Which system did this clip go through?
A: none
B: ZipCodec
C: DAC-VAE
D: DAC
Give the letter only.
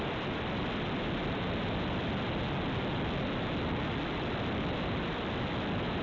A